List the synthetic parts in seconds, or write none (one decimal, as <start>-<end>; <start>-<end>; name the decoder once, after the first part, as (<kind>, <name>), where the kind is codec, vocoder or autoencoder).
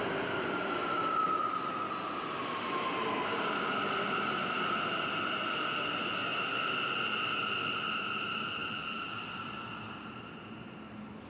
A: 8.6-9.2 (vocoder, BigVGAN v2)